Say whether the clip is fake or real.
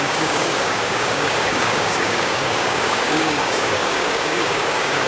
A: fake